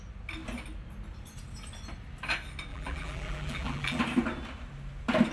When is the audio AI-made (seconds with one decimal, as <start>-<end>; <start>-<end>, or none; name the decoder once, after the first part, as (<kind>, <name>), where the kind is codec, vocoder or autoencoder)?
2.7-4.0 (vocoder, BigVGAN v2)